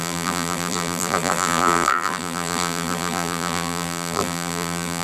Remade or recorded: remade